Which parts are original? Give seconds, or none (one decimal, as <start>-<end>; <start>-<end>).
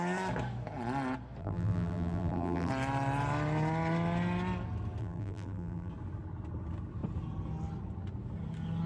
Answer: 0.0-1.4; 2.7-5.0; 5.9-8.9